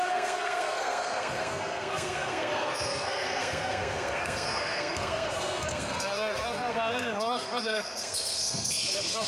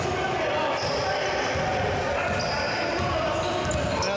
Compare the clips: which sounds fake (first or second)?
first